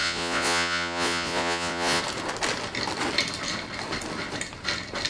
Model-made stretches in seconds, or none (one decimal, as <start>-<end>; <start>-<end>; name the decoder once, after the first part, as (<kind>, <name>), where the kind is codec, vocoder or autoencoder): 0.0-2.0 (vocoder, Vocos)